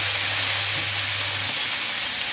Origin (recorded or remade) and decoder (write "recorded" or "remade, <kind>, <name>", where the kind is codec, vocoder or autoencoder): recorded